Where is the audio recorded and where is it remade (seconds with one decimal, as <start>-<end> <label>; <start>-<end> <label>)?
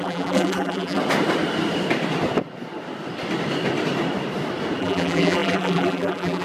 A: 0.0-1.0 remade; 1.0-4.8 recorded; 4.8-6.4 remade